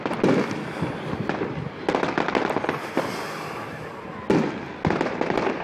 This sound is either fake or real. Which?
real